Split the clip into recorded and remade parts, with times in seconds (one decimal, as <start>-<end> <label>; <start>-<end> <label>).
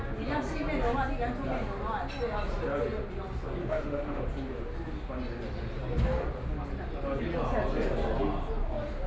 0.0-3.6 recorded; 3.6-4.2 remade; 4.2-9.1 recorded